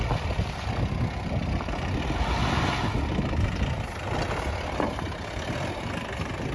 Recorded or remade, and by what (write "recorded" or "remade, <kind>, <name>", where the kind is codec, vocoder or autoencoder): recorded